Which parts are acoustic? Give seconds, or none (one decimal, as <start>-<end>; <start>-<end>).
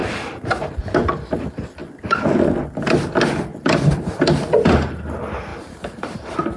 0.8-5.5